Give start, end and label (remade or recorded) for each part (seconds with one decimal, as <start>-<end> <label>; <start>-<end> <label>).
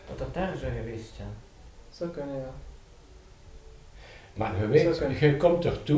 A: 0.0-6.0 recorded